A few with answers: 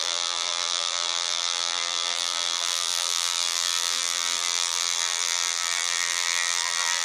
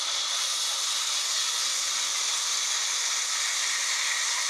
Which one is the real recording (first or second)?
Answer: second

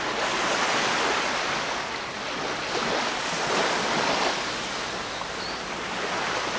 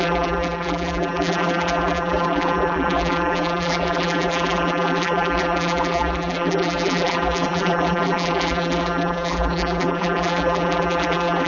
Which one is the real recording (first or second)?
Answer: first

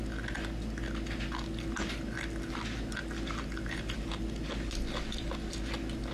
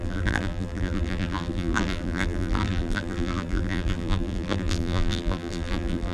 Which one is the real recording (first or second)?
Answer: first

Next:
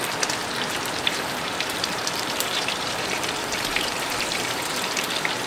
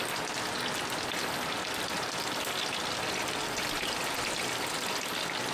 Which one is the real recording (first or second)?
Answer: second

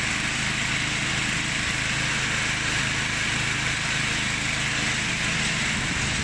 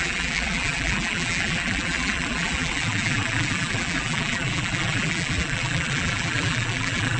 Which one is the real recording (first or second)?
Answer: first